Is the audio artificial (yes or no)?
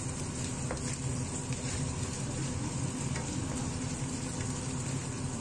no